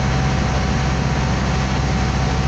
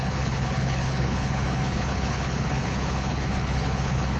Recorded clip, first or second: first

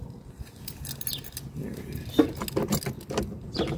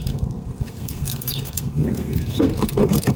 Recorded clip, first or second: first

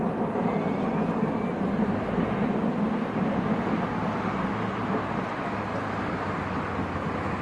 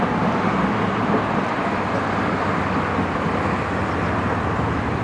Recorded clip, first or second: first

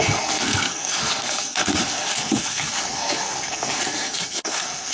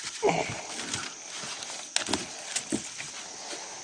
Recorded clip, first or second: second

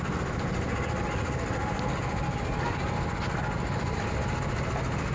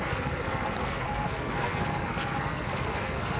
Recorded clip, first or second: first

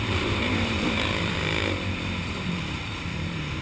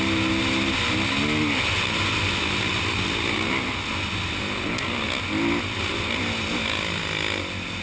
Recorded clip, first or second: second